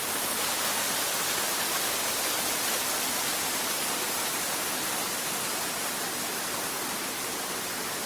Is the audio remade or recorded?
recorded